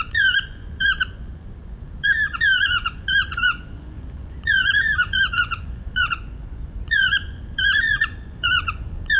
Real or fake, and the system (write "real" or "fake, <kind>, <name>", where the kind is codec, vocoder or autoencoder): fake, vocoder, Vocos